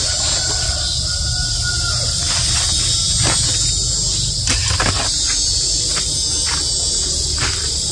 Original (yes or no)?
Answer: yes